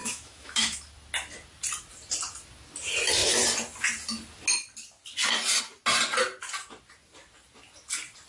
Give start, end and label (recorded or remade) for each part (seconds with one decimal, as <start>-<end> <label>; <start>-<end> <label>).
0.0-0.8 remade; 0.8-8.3 recorded